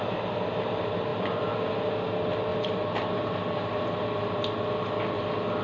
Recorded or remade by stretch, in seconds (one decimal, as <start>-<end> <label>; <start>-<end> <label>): 0.0-1.1 recorded; 1.1-1.7 remade; 1.7-2.5 recorded; 2.5-4.4 remade; 4.4-5.6 recorded